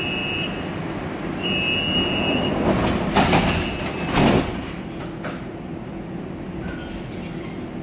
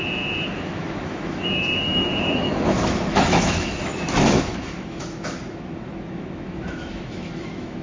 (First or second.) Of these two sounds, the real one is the first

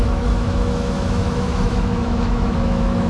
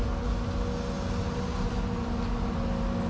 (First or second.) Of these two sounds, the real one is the second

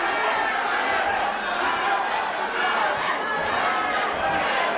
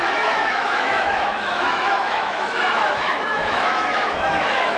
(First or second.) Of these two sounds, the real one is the first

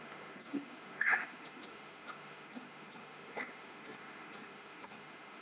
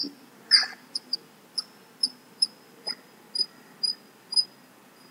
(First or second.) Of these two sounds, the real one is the second